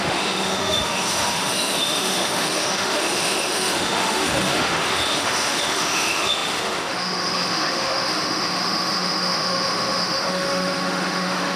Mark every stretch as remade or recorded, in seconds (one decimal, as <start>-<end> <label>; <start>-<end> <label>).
0.0-11.6 remade